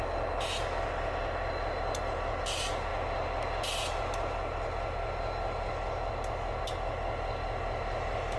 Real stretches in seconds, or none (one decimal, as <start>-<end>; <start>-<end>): 0.0-8.4